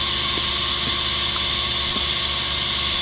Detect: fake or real real